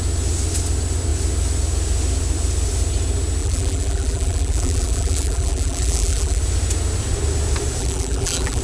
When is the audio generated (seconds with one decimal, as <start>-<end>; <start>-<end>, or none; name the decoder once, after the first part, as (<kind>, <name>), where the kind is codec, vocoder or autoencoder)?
3.4-6.4 (vocoder, BigVGAN v2); 7.8-8.6

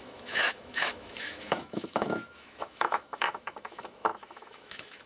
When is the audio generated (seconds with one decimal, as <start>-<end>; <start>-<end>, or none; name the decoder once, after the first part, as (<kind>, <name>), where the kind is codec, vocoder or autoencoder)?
0.0-5.1 (autoencoder, DAC-VAE)

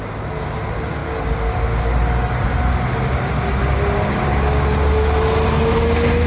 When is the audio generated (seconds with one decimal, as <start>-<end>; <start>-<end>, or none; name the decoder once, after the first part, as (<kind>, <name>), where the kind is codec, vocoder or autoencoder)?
none

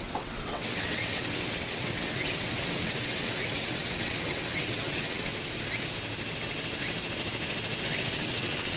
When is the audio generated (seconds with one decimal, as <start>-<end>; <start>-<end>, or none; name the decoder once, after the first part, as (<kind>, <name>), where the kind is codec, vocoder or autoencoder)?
0.0-5.3 (vocoder, WaveNeXt); 7.8-8.8

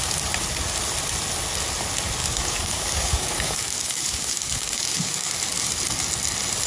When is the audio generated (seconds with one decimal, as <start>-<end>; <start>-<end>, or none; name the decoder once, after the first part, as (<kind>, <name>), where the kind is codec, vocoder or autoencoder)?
2.2-5.3 (codec, DAC)

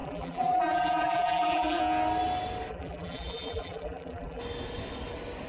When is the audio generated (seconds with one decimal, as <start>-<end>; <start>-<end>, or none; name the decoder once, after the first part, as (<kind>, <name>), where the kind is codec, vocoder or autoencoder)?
0.0-1.8 (vocoder, BigVGAN v2); 2.7-4.4

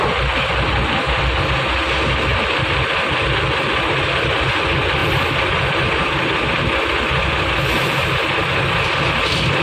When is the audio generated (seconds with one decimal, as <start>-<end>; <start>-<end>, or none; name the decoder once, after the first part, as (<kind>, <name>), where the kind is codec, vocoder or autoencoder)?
2.3-4.0 (vocoder, BigVGAN v2); 5.0-6.2

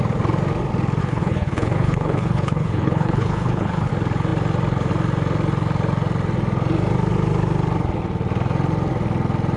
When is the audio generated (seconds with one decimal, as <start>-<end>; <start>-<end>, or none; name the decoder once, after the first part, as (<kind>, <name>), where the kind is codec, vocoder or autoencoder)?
1.0-3.9 (codec, HILCodec)